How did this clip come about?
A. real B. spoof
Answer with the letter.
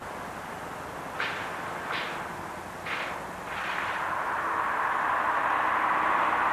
A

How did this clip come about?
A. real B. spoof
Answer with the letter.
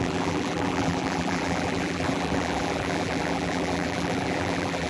B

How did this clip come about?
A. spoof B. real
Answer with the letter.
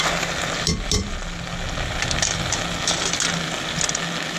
B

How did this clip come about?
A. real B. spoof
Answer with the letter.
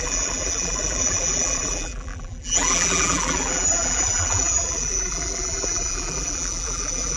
B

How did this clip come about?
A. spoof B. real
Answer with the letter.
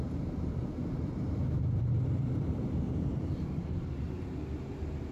A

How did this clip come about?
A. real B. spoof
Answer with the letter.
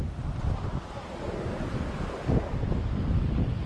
B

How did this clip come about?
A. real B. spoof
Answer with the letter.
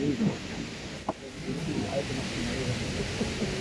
B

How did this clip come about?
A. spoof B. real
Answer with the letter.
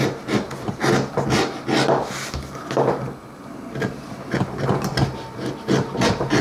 B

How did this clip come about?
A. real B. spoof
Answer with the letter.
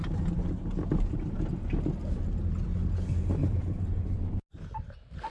A